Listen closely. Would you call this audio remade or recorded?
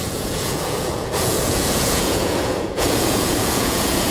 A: remade